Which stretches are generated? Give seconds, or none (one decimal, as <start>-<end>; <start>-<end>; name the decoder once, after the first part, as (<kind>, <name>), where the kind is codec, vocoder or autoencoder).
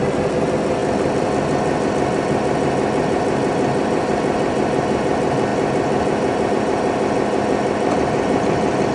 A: none